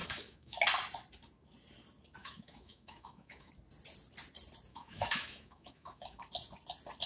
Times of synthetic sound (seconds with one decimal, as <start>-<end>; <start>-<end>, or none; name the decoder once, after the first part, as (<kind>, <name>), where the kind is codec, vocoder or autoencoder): 0.0-0.6 (autoencoder, DAC-VAE); 2.2-3.5; 4.7-6.2